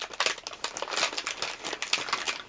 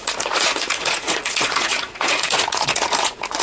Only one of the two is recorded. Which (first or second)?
first